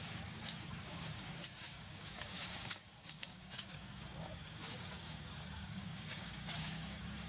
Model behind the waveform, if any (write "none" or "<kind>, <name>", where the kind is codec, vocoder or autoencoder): codec, DAC